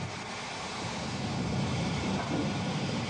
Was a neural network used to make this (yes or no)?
no